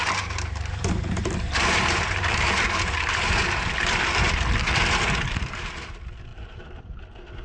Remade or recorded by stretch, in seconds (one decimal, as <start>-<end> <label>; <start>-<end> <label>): 0.0-4.4 remade; 4.4-6.3 recorded; 6.3-6.8 remade; 6.8-7.4 recorded